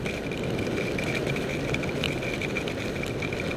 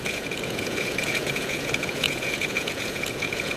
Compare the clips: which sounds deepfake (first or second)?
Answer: second